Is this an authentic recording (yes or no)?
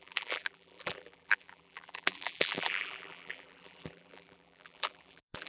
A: no